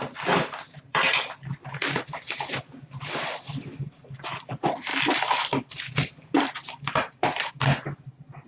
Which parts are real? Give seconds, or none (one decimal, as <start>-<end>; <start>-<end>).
0.0-0.9; 3.5-4.9; 7.5-8.5